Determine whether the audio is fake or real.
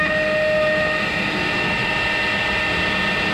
real